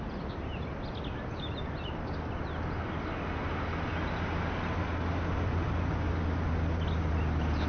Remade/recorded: recorded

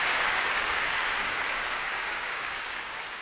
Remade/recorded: remade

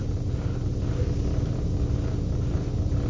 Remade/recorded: recorded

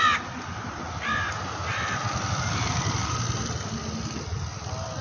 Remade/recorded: recorded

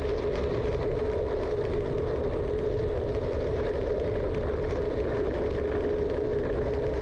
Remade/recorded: recorded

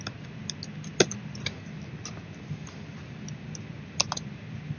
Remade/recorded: recorded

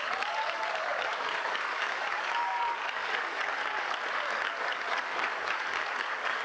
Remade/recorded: remade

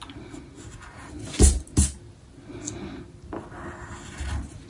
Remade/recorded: recorded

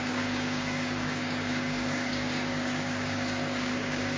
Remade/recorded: remade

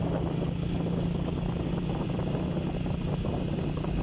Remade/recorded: recorded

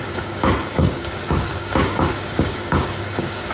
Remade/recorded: remade